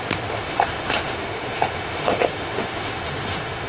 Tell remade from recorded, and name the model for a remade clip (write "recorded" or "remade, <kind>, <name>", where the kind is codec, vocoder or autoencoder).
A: remade, autoencoder, DAC-VAE